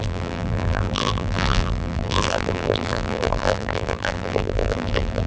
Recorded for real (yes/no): no